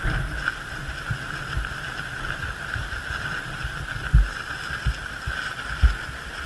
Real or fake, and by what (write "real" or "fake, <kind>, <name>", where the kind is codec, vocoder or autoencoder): real